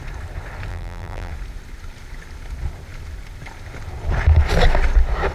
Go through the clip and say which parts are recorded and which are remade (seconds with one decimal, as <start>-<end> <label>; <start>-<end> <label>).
0.0-0.7 recorded; 0.7-1.3 remade; 1.3-5.3 recorded

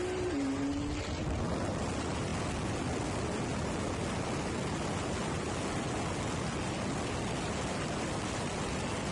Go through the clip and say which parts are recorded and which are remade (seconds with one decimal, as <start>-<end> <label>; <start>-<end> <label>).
0.0-9.1 recorded

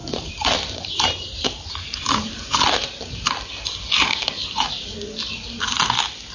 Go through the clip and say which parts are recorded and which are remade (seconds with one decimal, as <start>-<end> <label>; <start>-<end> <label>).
0.0-3.3 remade; 3.3-5.3 recorded; 5.3-5.8 remade; 5.8-6.3 recorded